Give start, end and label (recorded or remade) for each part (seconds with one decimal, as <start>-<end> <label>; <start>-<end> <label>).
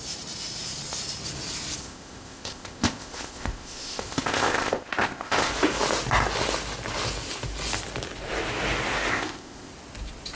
0.0-1.8 recorded; 1.8-5.5 remade; 5.5-9.1 recorded; 9.1-9.7 remade; 9.7-10.4 recorded